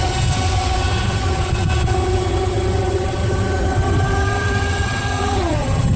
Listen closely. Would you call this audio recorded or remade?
remade